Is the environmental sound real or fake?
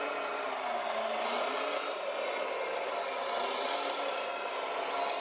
real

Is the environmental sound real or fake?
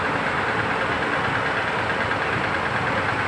real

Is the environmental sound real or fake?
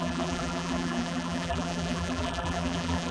fake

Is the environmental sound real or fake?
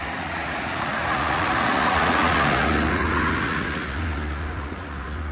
fake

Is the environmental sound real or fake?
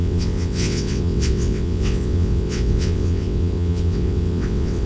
fake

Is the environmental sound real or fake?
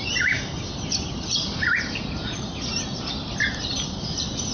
real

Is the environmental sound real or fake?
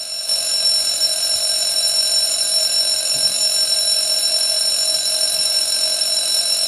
real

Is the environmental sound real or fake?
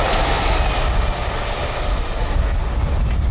real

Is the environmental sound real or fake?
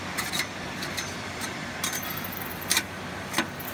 fake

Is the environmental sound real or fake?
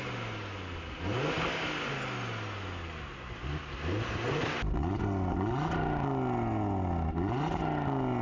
real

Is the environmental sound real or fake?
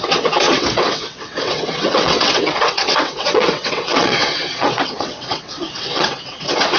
fake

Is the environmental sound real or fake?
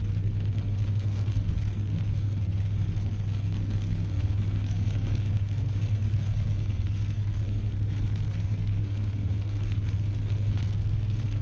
fake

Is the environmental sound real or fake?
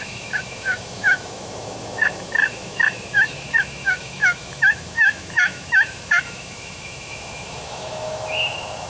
fake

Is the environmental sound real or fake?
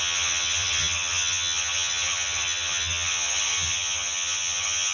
fake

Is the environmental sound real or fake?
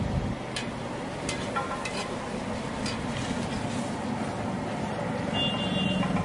real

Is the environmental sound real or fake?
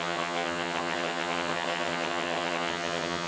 fake